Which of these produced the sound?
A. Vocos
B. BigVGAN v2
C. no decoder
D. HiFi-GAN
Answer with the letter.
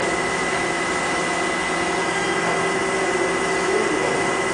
C